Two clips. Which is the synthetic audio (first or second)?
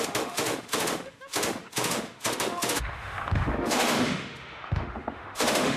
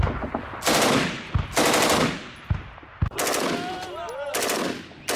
first